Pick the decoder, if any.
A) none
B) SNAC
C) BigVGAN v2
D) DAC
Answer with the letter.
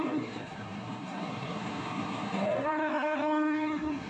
B